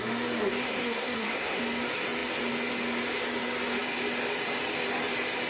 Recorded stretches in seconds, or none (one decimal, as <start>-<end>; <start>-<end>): 0.0-0.6; 1.6-5.5